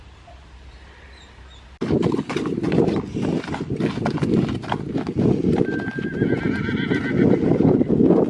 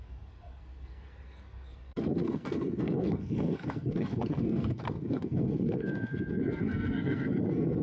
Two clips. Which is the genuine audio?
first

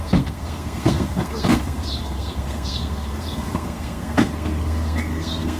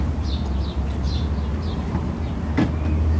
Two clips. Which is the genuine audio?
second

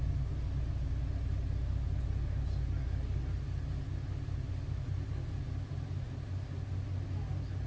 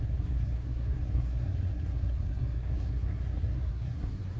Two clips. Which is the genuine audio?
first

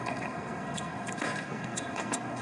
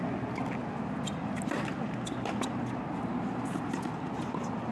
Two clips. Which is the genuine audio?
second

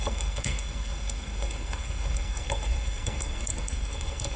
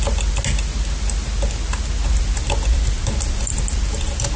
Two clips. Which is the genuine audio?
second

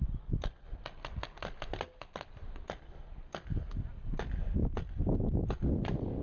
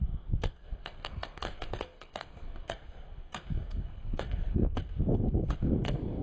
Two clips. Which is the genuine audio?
first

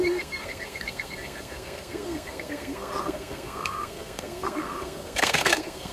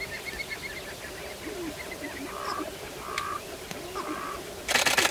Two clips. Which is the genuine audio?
second